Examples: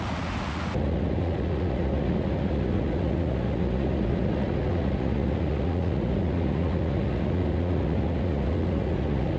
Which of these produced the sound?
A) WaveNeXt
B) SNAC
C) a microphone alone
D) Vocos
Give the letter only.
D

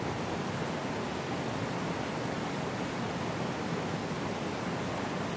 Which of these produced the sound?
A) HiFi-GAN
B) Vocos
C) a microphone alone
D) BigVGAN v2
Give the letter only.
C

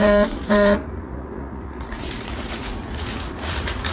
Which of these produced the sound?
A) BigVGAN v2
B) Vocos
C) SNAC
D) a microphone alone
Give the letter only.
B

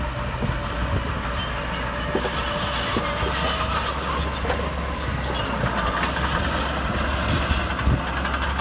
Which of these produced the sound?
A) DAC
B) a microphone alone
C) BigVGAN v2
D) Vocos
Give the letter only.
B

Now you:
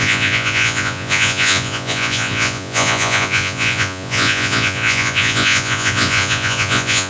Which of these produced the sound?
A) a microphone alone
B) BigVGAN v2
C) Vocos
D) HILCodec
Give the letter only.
C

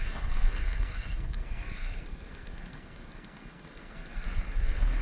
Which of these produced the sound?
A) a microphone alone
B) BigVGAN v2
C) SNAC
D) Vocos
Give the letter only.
C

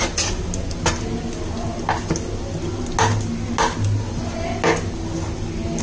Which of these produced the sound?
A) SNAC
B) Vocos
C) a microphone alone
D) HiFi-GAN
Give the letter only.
C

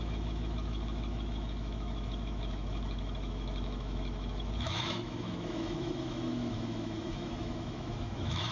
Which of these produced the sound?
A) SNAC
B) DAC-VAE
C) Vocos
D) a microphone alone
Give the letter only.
B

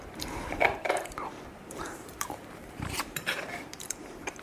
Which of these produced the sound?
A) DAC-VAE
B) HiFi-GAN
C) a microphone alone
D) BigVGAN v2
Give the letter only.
D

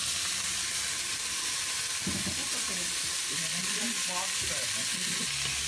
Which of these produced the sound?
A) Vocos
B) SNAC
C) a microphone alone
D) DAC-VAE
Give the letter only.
C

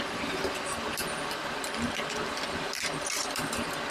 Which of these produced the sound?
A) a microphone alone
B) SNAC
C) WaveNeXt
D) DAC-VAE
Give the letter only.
A